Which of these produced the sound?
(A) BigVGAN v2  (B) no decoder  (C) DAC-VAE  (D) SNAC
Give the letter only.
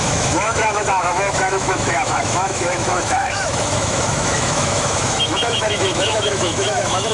C